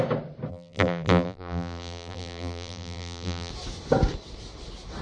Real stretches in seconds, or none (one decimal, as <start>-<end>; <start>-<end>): 0.0-0.5; 3.5-5.0